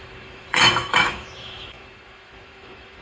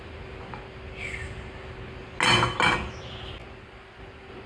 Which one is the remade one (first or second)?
first